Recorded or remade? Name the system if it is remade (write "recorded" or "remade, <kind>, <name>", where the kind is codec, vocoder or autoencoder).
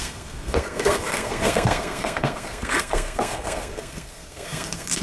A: remade, codec, SNAC